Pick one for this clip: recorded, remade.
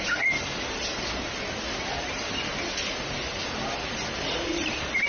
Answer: recorded